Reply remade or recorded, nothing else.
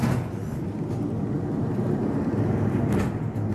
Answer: recorded